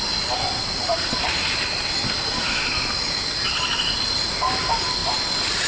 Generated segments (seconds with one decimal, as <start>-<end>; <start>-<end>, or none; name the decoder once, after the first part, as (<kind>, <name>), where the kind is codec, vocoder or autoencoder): none